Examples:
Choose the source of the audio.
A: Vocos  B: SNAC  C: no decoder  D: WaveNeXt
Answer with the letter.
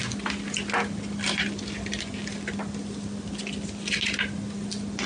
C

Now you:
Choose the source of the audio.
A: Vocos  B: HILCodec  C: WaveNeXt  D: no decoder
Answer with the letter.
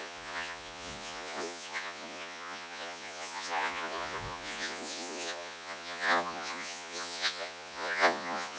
A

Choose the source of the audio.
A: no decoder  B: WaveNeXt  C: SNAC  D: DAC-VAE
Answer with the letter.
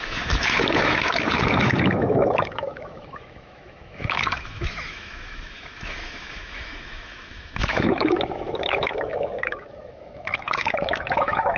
D